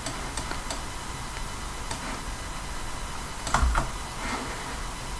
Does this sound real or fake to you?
real